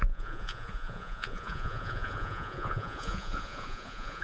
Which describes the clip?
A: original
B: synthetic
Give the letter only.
B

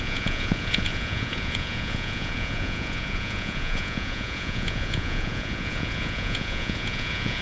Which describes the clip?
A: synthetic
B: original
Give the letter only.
A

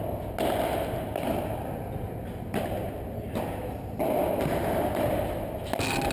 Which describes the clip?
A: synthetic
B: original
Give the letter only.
B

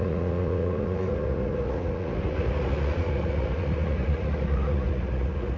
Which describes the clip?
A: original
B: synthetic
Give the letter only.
B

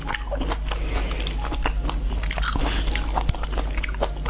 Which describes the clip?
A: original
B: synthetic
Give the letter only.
A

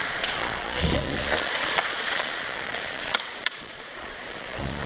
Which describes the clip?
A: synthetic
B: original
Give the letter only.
A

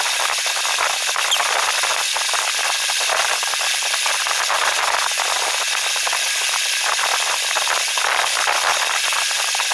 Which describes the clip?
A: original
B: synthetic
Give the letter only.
A